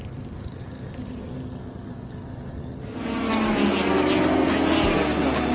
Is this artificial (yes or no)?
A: no